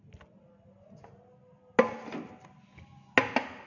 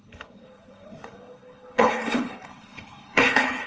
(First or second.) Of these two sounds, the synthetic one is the second